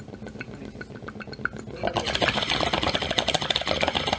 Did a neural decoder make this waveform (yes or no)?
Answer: no